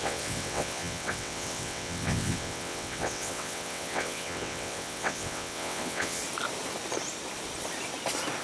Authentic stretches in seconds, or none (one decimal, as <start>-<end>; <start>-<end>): 6.2-8.4